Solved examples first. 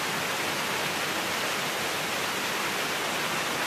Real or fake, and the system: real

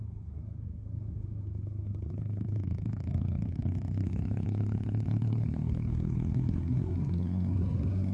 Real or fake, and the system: fake, codec, SNAC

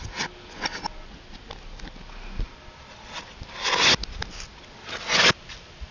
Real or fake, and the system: real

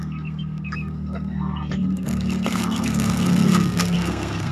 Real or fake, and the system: fake, codec, SNAC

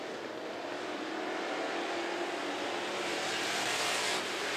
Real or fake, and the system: real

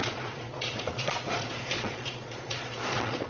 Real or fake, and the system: fake, vocoder, Vocos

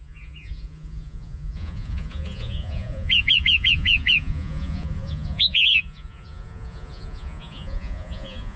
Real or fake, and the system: fake, vocoder, Vocos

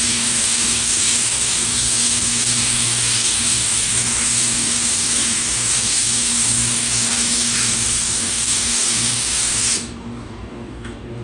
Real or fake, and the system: fake, codec, DAC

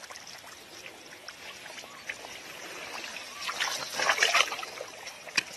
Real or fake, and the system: real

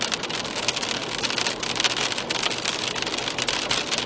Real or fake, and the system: real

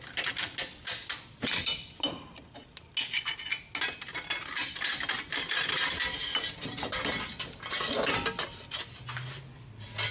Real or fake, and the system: real